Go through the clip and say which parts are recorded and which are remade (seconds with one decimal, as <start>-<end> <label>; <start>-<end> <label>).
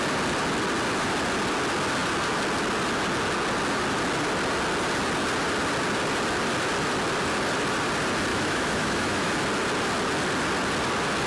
0.0-8.3 recorded; 8.3-9.3 remade; 9.3-11.3 recorded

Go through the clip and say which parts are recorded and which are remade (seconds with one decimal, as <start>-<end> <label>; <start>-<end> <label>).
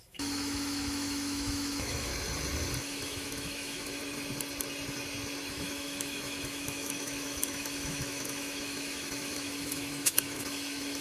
0.0-2.1 remade; 2.1-2.8 recorded; 2.8-4.0 remade; 4.0-5.5 recorded; 5.5-11.0 remade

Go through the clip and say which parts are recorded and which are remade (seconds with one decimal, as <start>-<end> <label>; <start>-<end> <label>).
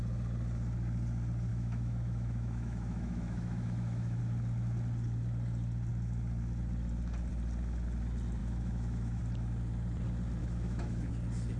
0.0-1.5 recorded; 1.5-4.2 remade; 4.2-8.4 recorded; 8.4-9.2 remade; 9.2-10.4 recorded; 10.4-11.1 remade; 11.1-11.6 recorded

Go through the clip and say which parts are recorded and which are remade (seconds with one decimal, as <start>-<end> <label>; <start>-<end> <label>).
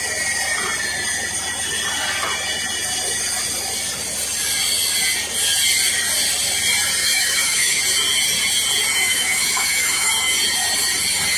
0.0-7.0 recorded; 7.0-7.8 remade; 7.8-8.9 recorded; 8.9-10.1 remade; 10.1-11.4 recorded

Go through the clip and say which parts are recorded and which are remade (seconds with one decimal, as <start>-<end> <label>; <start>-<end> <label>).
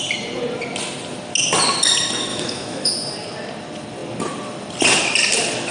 0.0-2.3 recorded; 2.3-2.9 remade; 2.9-5.7 recorded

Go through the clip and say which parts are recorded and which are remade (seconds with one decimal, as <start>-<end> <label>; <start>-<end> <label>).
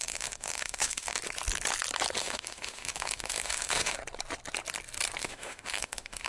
0.0-1.2 remade; 1.2-2.2 recorded; 2.2-4.0 remade; 4.0-5.2 recorded; 5.2-6.3 remade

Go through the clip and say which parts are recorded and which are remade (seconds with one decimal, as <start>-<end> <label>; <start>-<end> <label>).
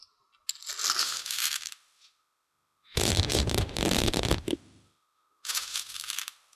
0.0-1.0 recorded; 1.0-6.6 remade